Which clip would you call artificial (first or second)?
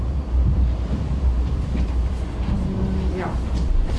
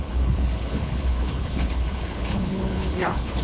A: second